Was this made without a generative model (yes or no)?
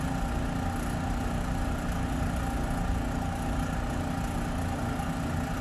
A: yes